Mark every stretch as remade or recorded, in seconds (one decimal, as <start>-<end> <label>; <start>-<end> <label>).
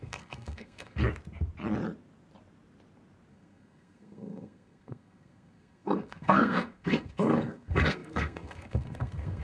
0.0-1.0 remade; 1.0-3.3 recorded; 3.3-9.4 remade